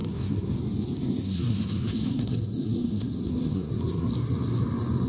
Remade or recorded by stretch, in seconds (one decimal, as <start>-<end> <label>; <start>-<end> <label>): 0.0-0.6 remade; 0.6-1.0 recorded; 1.0-4.1 remade; 4.1-5.1 recorded